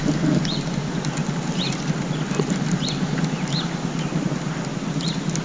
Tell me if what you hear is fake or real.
real